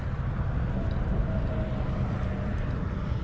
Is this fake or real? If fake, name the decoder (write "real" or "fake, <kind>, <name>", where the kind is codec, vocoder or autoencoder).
real